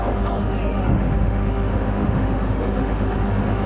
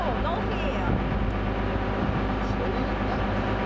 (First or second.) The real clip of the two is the second